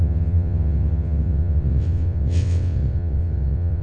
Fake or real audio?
fake